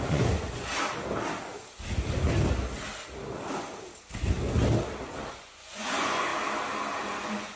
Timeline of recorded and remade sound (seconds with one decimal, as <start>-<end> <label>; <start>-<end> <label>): 0.0-0.7 remade; 0.7-5.3 recorded; 5.3-6.3 remade; 6.3-7.0 recorded; 7.0-7.6 remade